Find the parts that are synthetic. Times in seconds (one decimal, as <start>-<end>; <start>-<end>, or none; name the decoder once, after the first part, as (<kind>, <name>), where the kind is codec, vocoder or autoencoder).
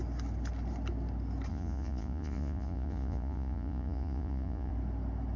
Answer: 1.5-4.7 (vocoder, Vocos)